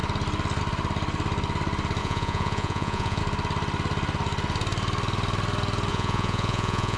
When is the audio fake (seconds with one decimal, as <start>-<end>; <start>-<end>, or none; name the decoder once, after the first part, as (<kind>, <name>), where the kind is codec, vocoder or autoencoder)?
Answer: 2.0-3.2 (vocoder, Vocos); 5.9-7.0